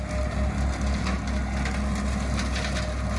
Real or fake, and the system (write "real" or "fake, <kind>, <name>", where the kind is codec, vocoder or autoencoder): real